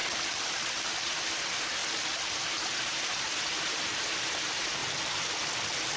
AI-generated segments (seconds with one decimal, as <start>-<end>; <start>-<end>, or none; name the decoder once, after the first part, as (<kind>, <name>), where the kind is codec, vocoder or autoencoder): 0.9-1.8 (vocoder, BigVGAN v2); 2.3-4.8